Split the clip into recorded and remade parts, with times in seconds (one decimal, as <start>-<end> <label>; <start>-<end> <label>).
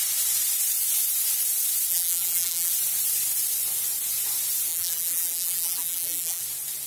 0.0-1.9 recorded; 1.9-2.7 remade; 2.7-4.7 recorded; 4.7-6.4 remade; 6.4-6.9 recorded